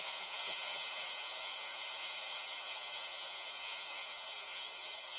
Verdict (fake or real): fake